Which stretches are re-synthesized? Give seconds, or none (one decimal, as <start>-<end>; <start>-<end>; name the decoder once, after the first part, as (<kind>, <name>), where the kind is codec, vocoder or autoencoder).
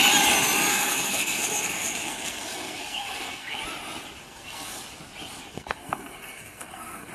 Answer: 0.7-3.6 (codec, SNAC); 4.2-4.8; 5.4-7.1